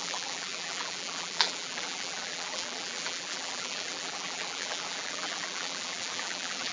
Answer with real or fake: fake